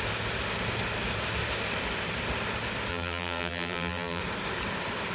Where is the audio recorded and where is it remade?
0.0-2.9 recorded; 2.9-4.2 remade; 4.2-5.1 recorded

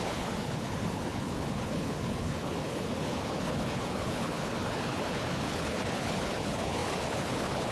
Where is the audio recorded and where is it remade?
0.0-7.7 remade